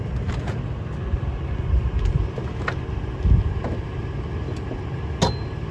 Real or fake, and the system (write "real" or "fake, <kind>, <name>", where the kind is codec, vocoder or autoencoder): real